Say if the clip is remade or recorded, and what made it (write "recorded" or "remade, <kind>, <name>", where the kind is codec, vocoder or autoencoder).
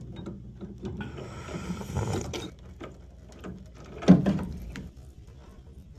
recorded